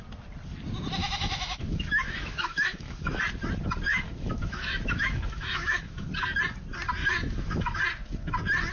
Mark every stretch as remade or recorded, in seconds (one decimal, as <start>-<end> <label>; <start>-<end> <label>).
0.0-1.0 recorded; 1.0-3.2 remade; 3.2-3.9 recorded; 3.9-6.1 remade; 6.1-7.0 recorded; 7.0-7.8 remade; 7.8-8.7 recorded